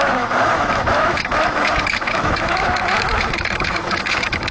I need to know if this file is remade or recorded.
remade